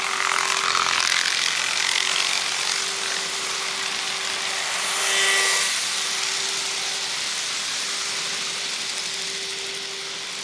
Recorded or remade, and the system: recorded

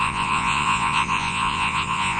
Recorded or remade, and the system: remade, vocoder, Vocos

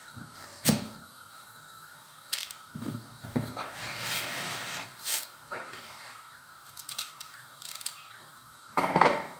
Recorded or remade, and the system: remade, codec, DAC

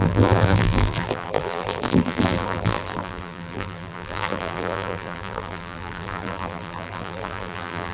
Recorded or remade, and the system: remade, vocoder, BigVGAN v2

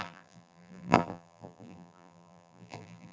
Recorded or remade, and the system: remade, vocoder, BigVGAN v2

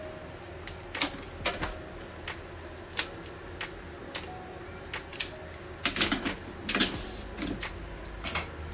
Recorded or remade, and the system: recorded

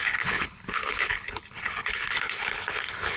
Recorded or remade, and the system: remade, codec, HILCodec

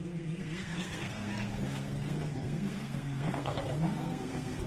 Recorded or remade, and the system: remade, codec, SNAC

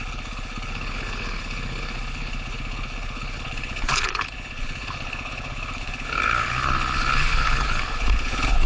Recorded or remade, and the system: remade, codec, HILCodec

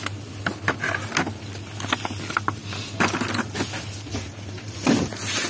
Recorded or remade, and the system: recorded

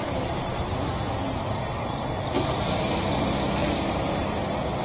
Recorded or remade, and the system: recorded